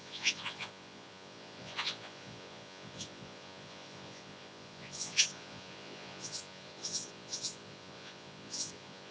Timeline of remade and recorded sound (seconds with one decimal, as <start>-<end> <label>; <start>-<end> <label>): 0.0-9.1 remade